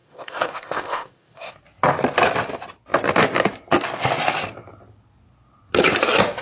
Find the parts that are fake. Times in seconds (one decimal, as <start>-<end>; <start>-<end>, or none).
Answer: 0.0-1.5

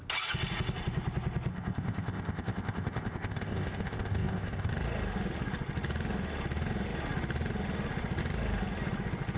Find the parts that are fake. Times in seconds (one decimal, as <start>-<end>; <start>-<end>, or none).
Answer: 1.5-4.7

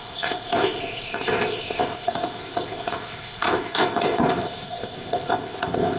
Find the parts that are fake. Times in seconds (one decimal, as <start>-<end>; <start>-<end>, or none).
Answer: 0.0-6.0

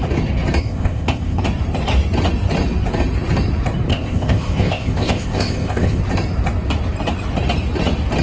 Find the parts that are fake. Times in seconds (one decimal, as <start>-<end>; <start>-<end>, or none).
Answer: 0.6-1.4; 3.9-6.0